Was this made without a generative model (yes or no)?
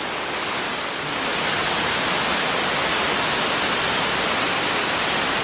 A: yes